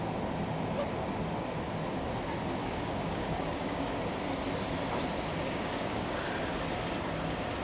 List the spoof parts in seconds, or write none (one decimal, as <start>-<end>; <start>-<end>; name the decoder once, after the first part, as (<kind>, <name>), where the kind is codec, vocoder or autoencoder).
2.6-4.0 (codec, DAC); 5.3-6.3